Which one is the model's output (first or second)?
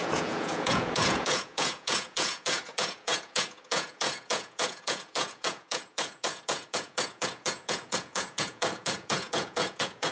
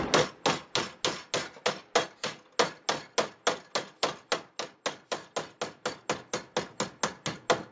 first